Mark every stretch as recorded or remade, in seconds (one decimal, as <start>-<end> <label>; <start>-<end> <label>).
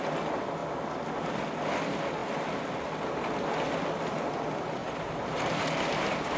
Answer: 0.0-4.8 recorded; 4.8-5.7 remade; 5.7-6.4 recorded